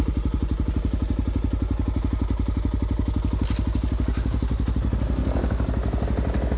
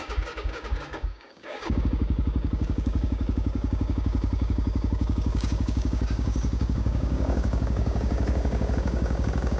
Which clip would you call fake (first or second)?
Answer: second